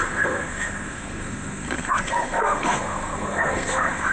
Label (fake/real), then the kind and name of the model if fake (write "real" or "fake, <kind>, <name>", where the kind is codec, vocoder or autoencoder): fake, codec, SNAC